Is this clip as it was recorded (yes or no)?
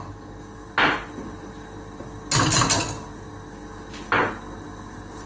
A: yes